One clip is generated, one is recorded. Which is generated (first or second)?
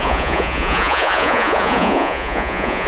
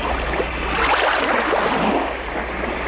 first